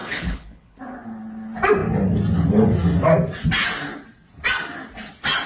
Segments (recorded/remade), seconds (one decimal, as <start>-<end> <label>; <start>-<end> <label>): 0.0-0.8 remade; 0.8-5.5 recorded